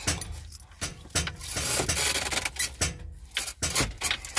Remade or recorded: recorded